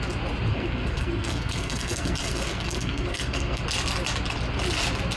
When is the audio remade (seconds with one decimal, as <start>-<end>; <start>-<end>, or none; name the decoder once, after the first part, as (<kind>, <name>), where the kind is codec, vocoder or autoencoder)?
0.5-3.6 (codec, SNAC)